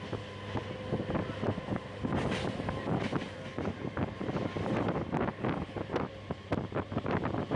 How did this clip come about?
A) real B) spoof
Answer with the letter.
A